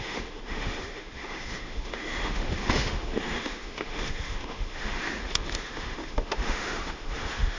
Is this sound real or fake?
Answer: fake